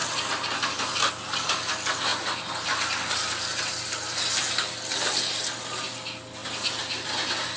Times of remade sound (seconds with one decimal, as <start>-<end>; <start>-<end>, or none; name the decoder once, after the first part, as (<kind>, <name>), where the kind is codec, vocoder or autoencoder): none